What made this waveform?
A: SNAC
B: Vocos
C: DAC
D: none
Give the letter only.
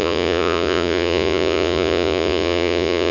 B